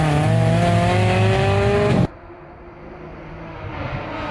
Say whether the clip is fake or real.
real